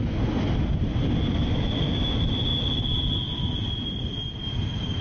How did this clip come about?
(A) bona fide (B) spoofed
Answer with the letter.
A